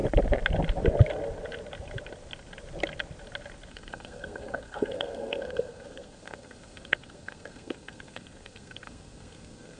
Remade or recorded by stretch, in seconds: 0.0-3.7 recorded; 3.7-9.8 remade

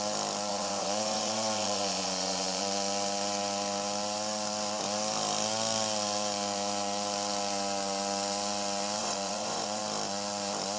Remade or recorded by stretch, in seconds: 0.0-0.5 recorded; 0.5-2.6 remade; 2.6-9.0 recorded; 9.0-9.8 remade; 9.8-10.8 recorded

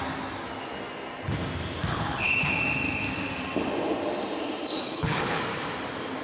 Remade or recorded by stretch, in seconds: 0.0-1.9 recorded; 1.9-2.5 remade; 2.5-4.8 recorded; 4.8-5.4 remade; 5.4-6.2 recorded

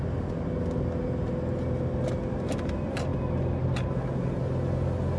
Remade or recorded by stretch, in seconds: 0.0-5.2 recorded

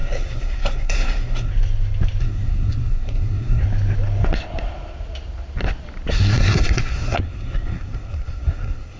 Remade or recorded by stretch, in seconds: 0.0-1.5 remade; 1.5-2.2 recorded; 2.2-3.6 remade; 3.6-6.1 recorded; 6.1-9.0 remade